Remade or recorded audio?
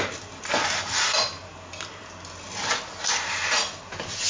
recorded